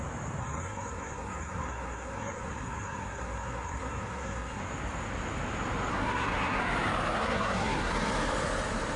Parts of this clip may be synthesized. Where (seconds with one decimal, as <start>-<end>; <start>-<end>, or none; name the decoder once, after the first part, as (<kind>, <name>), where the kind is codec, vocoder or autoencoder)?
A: 0.4-4.6 (codec, SNAC); 5.9-6.6; 7.1-7.9